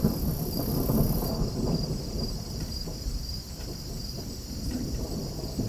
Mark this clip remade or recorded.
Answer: remade